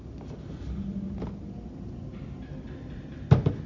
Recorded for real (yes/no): yes